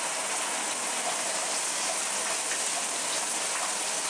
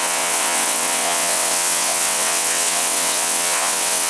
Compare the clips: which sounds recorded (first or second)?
first